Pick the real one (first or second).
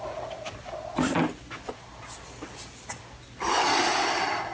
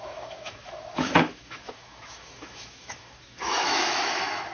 first